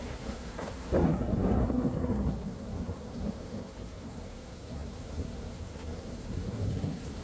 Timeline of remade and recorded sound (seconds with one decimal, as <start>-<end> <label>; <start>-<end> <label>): 0.0-7.2 remade